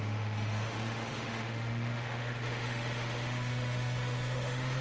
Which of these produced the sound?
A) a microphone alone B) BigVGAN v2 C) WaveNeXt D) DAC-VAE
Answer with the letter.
D